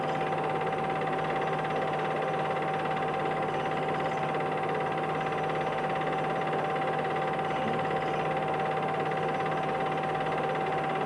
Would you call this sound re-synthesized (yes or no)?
no